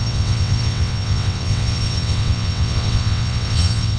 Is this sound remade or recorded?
remade